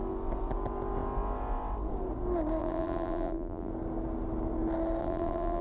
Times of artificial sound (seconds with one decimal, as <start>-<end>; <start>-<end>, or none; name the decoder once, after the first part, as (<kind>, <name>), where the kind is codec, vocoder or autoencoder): 2.6-3.7 (vocoder, BigVGAN v2); 5.0-5.6